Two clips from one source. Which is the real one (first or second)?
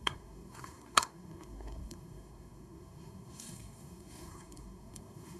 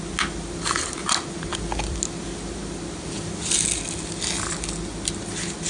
second